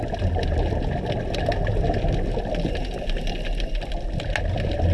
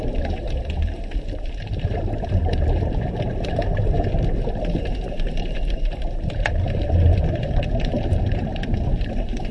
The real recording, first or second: first